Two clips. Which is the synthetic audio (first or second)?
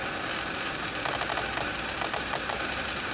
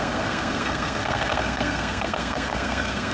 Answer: second